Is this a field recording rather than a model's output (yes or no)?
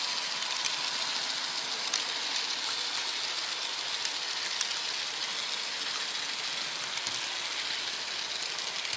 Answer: yes